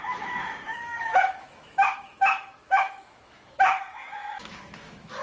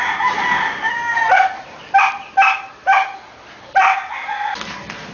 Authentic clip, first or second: second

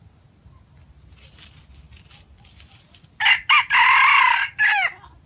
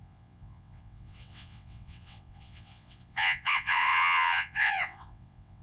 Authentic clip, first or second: first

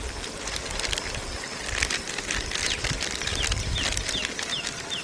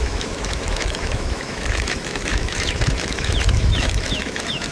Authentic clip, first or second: first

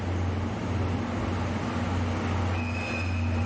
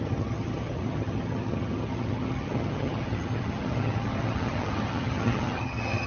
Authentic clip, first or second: first